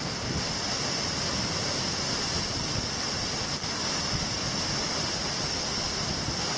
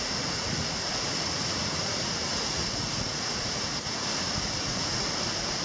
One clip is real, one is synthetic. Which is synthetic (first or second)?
second